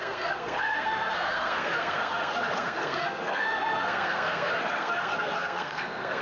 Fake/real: fake